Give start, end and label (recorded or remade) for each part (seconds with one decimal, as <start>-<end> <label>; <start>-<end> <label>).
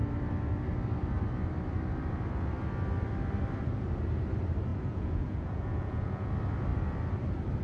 0.0-4.7 recorded; 4.7-6.3 remade; 6.3-7.6 recorded